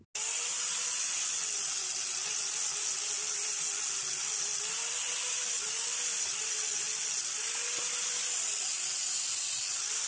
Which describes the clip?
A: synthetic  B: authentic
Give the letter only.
B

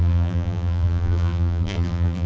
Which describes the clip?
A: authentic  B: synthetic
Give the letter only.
B